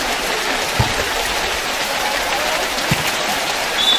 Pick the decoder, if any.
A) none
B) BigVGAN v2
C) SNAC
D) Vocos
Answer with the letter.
A